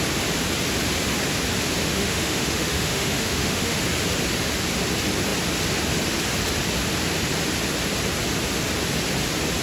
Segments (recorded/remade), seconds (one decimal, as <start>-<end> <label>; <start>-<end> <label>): 0.0-1.8 recorded; 1.8-3.8 remade; 3.8-9.6 recorded